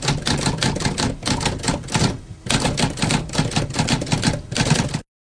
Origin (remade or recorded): recorded